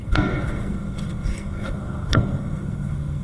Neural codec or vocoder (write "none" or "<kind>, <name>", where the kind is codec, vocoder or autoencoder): codec, SNAC